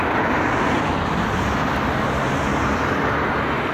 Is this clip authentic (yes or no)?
yes